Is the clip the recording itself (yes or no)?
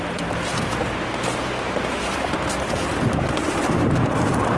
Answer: yes